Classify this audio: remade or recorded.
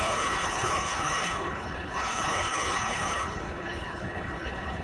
remade